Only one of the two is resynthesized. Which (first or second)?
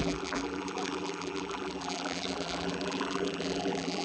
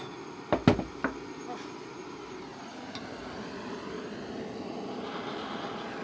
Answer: first